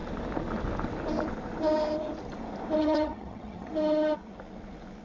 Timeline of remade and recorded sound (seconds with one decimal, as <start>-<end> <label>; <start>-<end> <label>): 0.0-2.8 recorded; 2.8-3.7 remade; 3.7-5.0 recorded